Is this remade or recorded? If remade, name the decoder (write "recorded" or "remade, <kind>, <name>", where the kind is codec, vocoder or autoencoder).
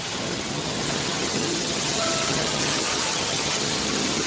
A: remade, vocoder, HiFi-GAN